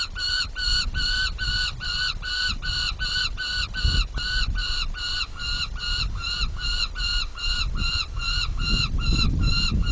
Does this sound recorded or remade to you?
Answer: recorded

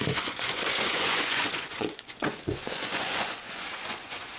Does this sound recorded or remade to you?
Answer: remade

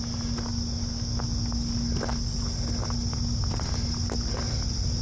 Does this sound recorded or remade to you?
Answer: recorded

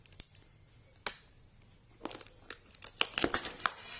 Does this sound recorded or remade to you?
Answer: recorded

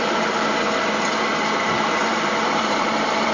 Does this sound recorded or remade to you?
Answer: remade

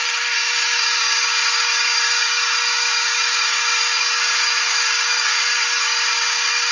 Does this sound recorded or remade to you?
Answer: remade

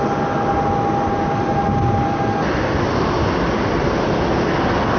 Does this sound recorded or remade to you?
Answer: recorded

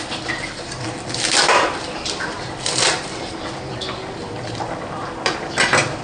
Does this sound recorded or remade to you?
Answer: remade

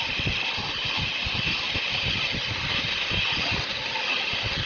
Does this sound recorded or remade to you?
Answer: recorded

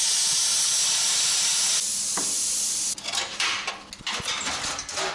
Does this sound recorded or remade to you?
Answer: recorded